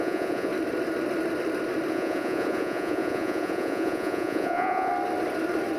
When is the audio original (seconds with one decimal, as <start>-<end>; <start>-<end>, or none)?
0.5-1.9; 4.9-5.8